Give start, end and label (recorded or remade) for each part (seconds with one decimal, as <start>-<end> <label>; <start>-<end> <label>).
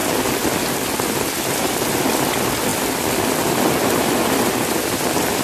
0.0-5.4 recorded